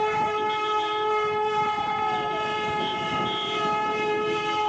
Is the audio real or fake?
real